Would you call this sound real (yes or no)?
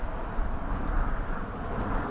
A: no